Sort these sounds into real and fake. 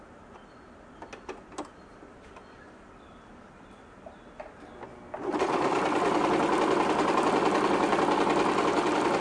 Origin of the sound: real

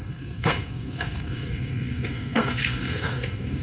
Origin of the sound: fake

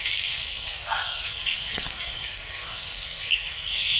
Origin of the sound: fake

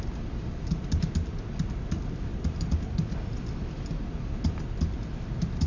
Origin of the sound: real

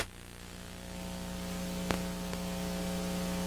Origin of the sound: real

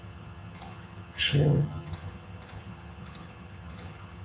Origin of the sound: fake